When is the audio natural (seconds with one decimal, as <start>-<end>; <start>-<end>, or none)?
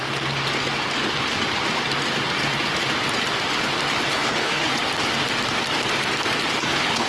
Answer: 0.0-4.1; 4.7-6.6